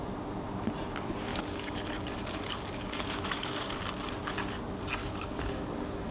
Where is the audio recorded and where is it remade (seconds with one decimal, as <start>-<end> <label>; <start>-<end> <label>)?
0.0-1.3 recorded; 1.3-3.8 remade; 3.8-5.0 recorded; 5.0-6.1 remade